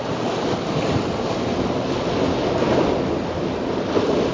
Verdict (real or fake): real